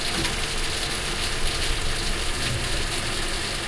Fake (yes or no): no